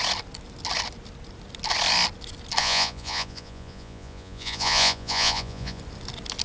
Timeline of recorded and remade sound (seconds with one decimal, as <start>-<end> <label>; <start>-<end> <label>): 0.0-2.6 recorded; 2.6-5.8 remade; 5.8-6.4 recorded